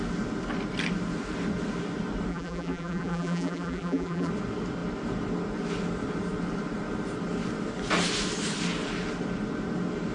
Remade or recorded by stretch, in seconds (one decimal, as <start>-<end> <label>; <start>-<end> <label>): 0.0-2.3 recorded; 2.3-4.3 remade; 4.3-10.1 recorded